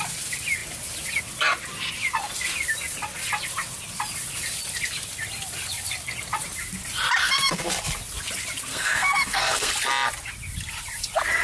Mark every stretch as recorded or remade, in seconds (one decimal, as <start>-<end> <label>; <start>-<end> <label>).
0.0-7.2 recorded; 7.2-7.7 remade; 7.7-8.7 recorded; 8.7-9.7 remade; 9.7-11.4 recorded